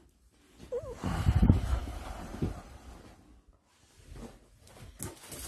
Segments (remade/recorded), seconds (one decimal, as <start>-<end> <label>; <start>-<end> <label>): 0.0-5.5 recorded